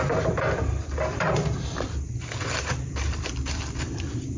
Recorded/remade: remade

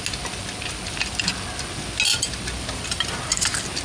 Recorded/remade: recorded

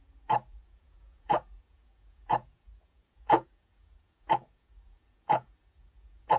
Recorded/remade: remade